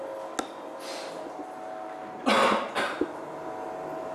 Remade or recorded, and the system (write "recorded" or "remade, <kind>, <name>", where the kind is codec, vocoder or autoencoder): recorded